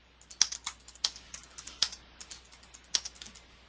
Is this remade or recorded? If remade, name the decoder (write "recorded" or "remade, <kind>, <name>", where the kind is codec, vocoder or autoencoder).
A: recorded